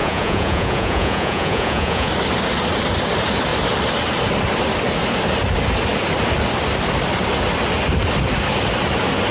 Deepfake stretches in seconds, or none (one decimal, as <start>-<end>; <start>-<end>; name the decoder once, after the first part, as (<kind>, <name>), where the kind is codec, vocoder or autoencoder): 0.0-2.1 (vocoder, Vocos)